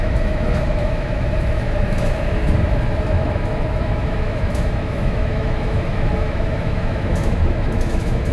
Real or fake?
fake